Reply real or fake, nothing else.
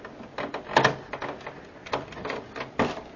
real